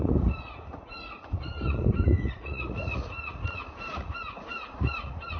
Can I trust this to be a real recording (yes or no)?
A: no